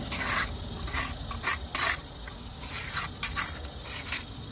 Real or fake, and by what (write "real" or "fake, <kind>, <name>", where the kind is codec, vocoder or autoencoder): real